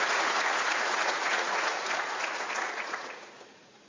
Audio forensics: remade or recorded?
remade